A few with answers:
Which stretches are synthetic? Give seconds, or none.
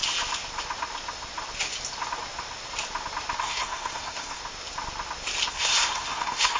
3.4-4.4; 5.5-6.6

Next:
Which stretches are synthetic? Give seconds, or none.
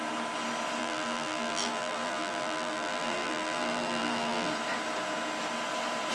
0.8-4.5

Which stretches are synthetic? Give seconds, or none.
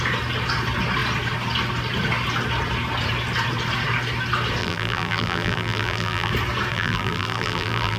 4.6-6.3; 6.7-8.0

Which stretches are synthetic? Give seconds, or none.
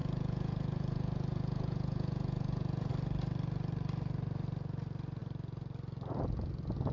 0.0-2.9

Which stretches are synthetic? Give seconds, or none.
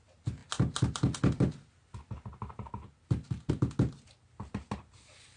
none